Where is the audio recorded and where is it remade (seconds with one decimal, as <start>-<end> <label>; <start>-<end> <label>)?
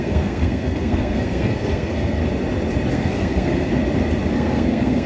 0.0-2.2 remade; 2.2-2.9 recorded; 2.9-3.7 remade; 3.7-4.3 recorded; 4.3-5.1 remade